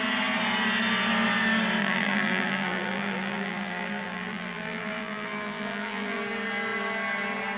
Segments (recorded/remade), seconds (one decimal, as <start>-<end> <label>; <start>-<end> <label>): 0.0-1.8 recorded; 1.8-6.2 remade; 6.2-7.6 recorded